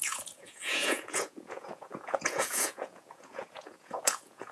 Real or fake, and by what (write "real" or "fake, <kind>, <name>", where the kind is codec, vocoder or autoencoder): fake, vocoder, Vocos